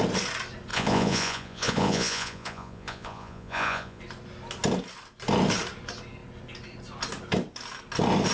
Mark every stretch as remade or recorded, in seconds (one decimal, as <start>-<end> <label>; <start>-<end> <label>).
0.0-0.7 recorded; 0.7-4.0 remade; 4.0-8.3 recorded

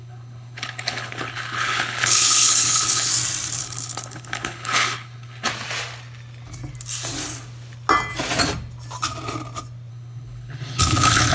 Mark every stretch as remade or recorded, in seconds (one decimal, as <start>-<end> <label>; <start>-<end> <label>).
0.0-3.1 remade; 3.1-3.6 recorded; 3.6-5.5 remade; 5.5-9.9 recorded; 9.9-11.3 remade

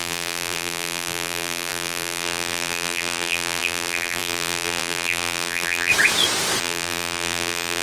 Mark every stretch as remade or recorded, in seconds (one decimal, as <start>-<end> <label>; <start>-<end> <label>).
0.0-5.9 remade; 5.9-6.6 recorded; 6.6-7.8 remade

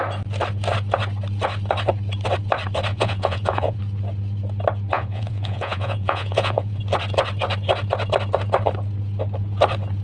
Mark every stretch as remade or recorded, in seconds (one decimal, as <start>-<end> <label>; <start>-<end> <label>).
0.0-2.9 recorded; 2.9-3.8 remade; 3.8-4.9 recorded; 4.9-6.8 remade; 6.8-10.0 recorded

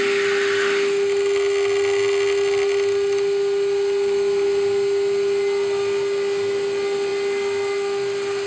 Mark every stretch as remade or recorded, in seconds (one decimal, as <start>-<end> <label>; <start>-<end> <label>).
0.0-8.5 recorded